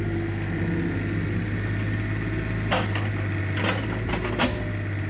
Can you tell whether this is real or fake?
real